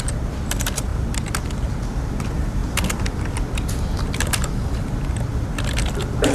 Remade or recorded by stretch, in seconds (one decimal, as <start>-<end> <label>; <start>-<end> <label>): 0.0-6.3 remade